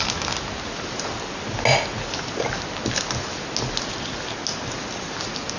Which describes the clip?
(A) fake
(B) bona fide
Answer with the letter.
B